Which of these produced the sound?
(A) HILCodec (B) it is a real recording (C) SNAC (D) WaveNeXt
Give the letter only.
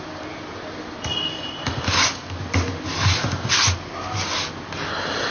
B